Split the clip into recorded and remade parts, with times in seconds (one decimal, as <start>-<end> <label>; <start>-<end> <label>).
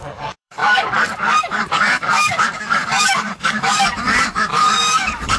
0.0-5.4 remade